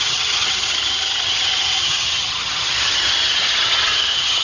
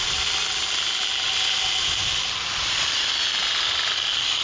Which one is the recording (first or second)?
second